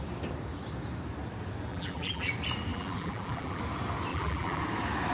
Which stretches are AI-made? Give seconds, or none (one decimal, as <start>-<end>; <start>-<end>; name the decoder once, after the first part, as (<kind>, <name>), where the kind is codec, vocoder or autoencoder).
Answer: 1.7-2.3 (vocoder, BigVGAN v2); 2.7-3.6; 4.1-4.6